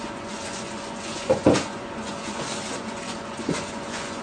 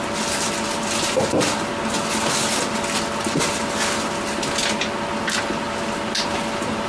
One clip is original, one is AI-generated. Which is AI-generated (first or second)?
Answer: first